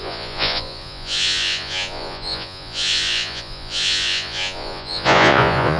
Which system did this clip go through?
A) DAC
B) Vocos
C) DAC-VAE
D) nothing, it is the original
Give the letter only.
B